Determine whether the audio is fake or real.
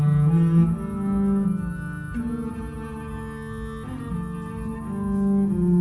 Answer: real